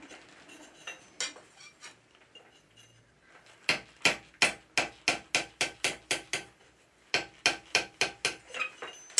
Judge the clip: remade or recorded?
recorded